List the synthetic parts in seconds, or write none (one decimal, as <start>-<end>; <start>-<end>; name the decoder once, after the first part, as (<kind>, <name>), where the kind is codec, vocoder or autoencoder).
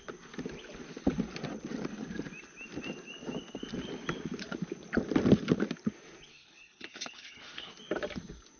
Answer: 6.3-7.7 (codec, HILCodec)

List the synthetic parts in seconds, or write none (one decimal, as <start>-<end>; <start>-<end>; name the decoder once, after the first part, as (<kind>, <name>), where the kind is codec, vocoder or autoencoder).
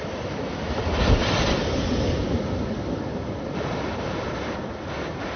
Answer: none